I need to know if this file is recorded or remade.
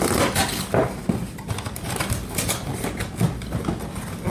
recorded